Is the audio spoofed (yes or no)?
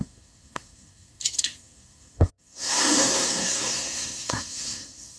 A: yes